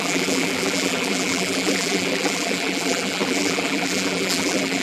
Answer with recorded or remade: remade